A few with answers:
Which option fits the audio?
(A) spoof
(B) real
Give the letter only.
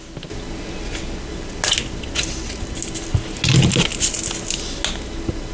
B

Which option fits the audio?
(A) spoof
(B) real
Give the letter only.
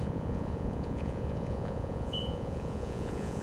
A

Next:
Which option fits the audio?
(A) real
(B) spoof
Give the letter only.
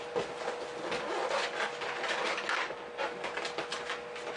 A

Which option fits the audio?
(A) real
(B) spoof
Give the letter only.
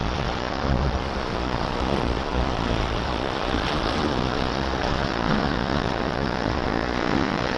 B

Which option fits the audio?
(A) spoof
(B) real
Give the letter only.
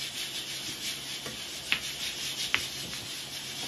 B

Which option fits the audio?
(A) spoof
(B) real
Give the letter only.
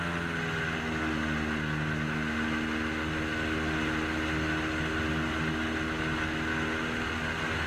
B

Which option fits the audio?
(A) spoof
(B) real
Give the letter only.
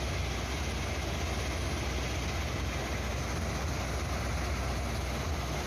B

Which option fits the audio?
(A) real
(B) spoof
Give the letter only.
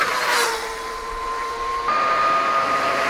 A